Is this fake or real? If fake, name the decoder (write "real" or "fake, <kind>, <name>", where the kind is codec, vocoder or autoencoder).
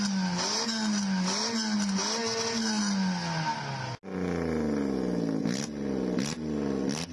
real